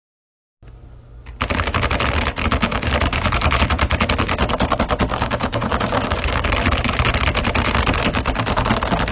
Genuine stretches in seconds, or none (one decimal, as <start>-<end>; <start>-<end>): 0.0-2.4; 2.9-5.1; 6.5-9.1